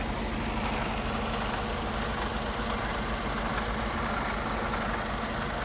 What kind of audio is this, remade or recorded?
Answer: recorded